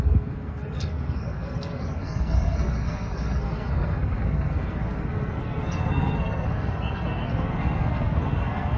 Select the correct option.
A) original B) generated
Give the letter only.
B